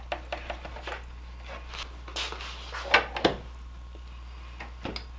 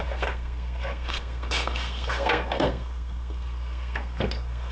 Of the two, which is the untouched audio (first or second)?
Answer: first